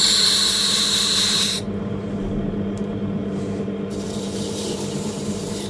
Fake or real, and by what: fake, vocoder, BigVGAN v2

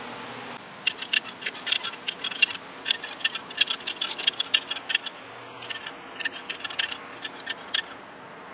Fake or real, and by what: real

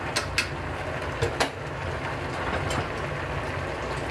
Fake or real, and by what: real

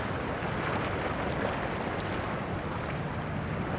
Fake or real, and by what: real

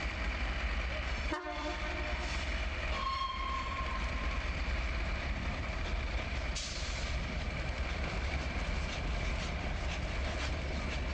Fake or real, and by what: fake, vocoder, BigVGAN v2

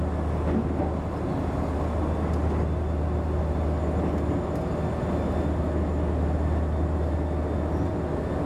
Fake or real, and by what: real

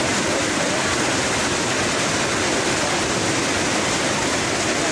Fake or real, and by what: real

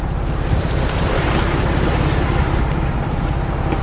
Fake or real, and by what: fake, vocoder, BigVGAN v2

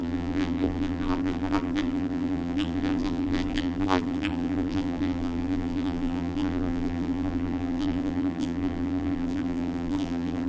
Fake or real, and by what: fake, vocoder, BigVGAN v2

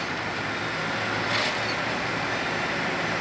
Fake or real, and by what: real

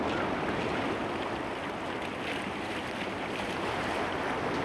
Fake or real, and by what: real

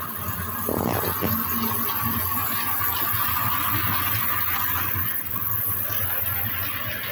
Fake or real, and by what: real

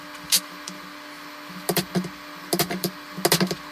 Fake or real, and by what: real